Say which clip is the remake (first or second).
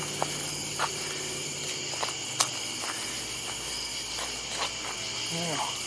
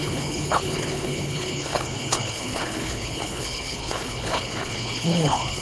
second